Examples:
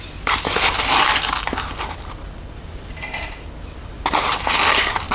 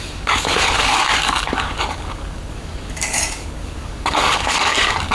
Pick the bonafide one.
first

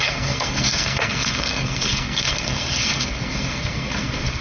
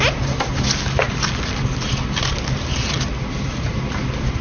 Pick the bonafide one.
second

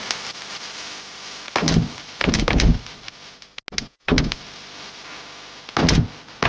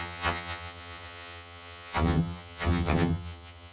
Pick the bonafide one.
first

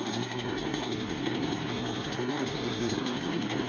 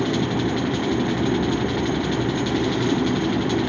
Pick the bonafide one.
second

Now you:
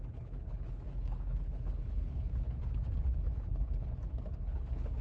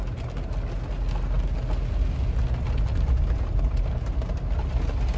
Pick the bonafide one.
second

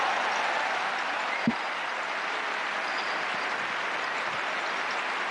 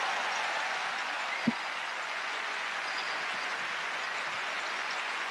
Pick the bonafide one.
first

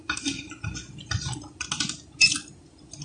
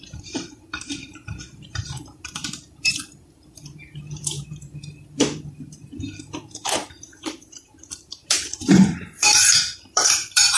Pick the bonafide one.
first